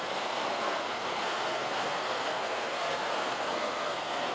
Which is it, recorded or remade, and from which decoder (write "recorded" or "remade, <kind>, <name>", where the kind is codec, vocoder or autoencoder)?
remade, codec, SNAC